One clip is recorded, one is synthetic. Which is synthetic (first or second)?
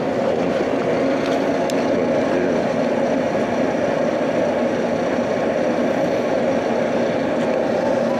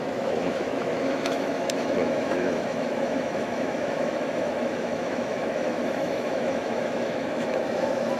second